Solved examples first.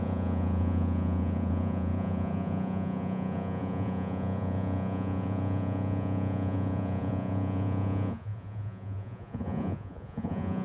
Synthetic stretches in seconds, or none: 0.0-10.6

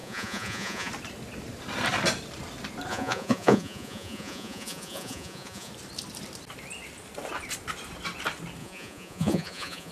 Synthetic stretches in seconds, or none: 0.0-0.9; 2.9-5.7; 8.6-9.9

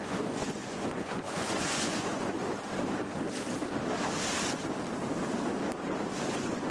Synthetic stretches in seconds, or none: 0.0-2.4; 6.3-6.7

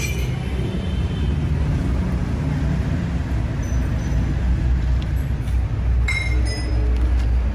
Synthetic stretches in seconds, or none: none

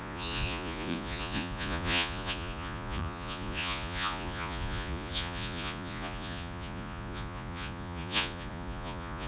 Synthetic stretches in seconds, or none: 0.0-9.3

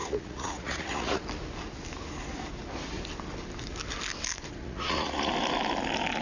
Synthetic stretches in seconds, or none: 0.0-1.2; 4.6-5.3

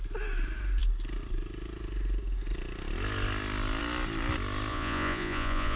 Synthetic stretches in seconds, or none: 4.7-5.8